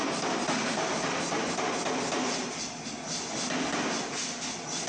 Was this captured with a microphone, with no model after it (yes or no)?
yes